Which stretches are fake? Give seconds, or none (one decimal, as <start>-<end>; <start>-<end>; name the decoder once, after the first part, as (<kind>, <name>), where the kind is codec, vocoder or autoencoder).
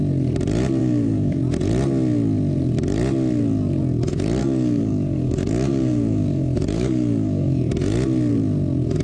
0.8-1.4 (codec, DAC); 4.4-7.7